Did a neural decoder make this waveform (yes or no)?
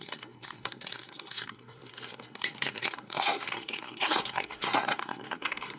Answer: yes